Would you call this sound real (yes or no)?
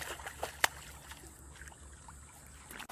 yes